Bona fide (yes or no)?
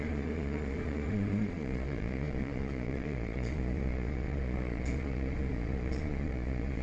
no